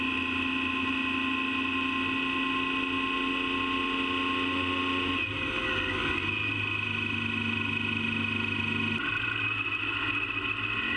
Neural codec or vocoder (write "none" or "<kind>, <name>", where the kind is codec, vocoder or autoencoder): none